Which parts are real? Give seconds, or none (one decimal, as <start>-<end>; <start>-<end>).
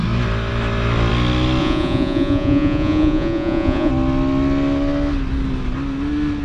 0.0-1.6; 3.9-6.4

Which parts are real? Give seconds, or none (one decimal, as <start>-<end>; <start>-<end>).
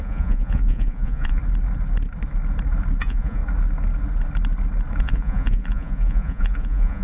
1.4-3.0; 3.4-5.0